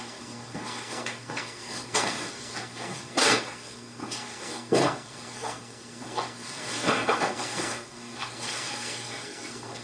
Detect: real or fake fake